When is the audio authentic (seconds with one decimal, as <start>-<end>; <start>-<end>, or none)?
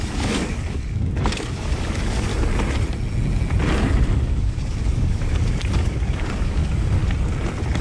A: 2.3-4.1; 7.0-7.8